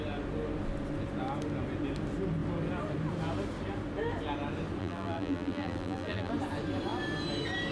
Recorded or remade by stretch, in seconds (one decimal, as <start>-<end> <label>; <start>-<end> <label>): 0.0-4.8 recorded; 4.8-6.3 remade; 6.3-7.7 recorded